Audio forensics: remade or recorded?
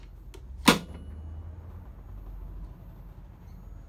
recorded